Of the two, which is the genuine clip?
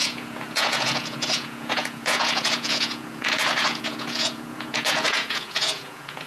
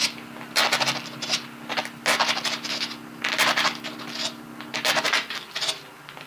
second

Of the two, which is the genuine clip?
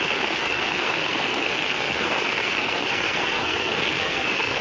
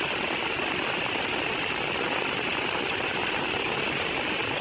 second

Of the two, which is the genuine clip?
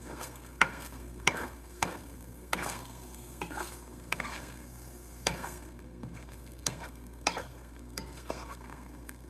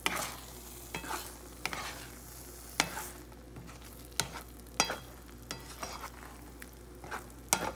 second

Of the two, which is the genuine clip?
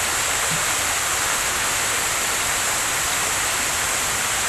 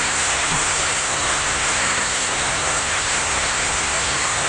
first